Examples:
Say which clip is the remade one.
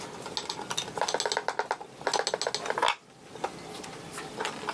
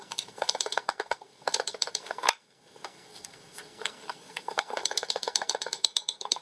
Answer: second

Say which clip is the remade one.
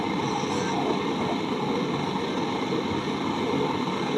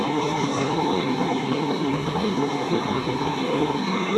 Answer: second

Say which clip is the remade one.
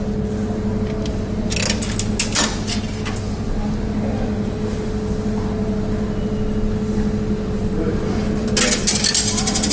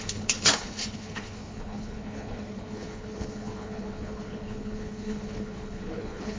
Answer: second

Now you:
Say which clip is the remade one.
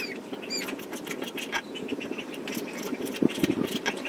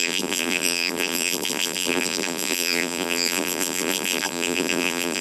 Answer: second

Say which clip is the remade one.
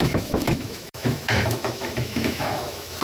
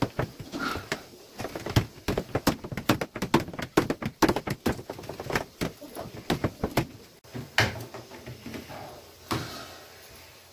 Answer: first